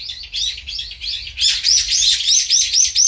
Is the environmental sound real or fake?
real